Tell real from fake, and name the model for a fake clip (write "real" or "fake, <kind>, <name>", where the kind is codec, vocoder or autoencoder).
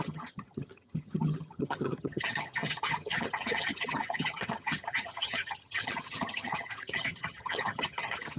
fake, vocoder, HiFi-GAN